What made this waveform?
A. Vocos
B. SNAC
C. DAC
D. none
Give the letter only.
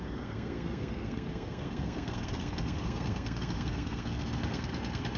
B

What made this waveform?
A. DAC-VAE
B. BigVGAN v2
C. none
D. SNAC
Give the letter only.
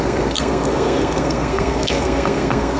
D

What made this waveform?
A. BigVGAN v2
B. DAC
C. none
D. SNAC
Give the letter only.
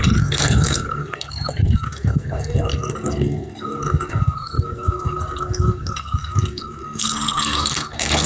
D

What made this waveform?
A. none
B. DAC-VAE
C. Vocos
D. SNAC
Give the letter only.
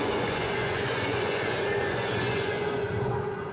C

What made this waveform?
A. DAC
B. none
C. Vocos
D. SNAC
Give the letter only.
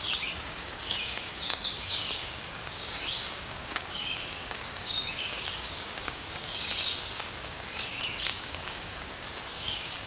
A